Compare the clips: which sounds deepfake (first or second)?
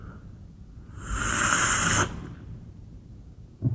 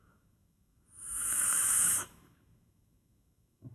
second